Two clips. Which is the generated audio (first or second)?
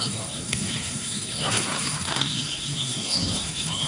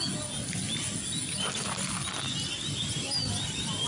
first